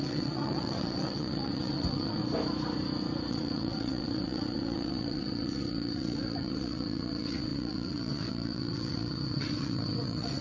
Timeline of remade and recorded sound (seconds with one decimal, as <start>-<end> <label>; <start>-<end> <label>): 0.0-2.2 remade; 2.2-3.3 recorded; 3.3-10.4 remade